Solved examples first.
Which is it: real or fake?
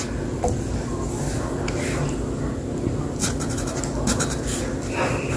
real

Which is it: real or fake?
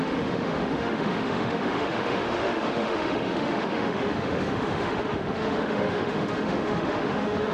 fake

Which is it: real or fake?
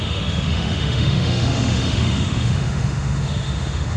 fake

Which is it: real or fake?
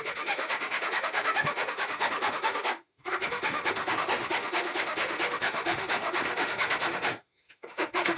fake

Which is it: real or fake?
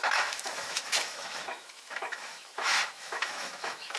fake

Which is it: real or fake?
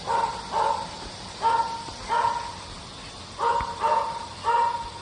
real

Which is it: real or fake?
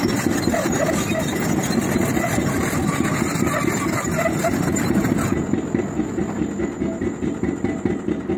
real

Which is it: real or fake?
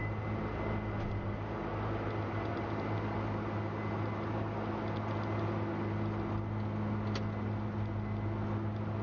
real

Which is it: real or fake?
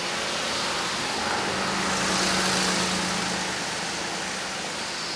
real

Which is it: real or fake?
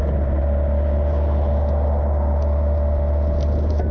real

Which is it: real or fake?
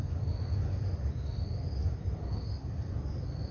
real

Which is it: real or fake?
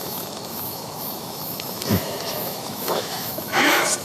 fake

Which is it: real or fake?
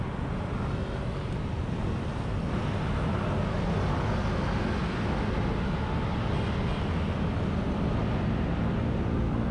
real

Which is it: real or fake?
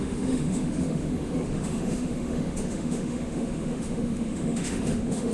fake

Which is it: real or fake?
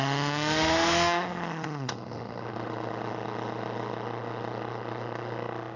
fake